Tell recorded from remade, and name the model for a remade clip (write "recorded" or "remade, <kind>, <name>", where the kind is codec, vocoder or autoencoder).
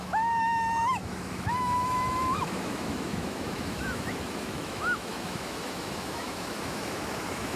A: remade, autoencoder, DAC-VAE